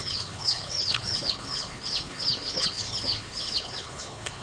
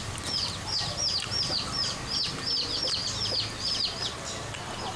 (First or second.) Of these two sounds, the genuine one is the second